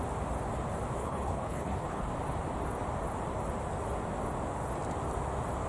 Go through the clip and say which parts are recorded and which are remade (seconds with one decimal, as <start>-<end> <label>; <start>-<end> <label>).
0.0-1.0 recorded; 1.0-2.1 remade; 2.1-5.7 recorded